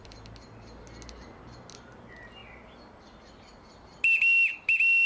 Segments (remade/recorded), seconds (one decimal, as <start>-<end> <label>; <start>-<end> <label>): 0.0-5.1 recorded